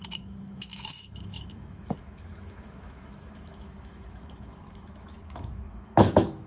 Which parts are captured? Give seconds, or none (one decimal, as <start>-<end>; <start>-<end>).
none